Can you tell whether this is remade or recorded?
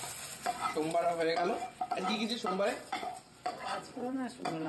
remade